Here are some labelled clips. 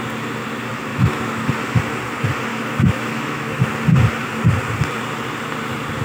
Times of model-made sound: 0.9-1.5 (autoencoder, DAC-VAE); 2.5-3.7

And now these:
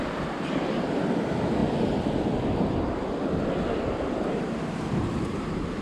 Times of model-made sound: none

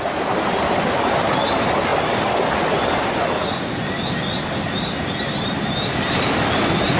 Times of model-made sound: none

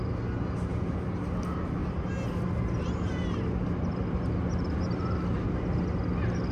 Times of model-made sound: none

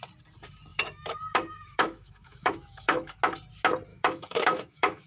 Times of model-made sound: 0.7-3.2 (autoencoder, DAC-VAE); 3.9-5.1